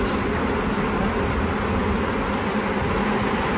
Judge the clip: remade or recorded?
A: recorded